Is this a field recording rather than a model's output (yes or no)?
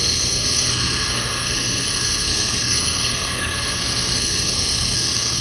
no